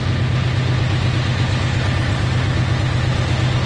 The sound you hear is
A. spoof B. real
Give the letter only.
B